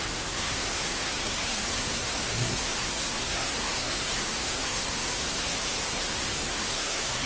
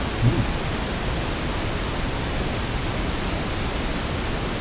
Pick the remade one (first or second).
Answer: first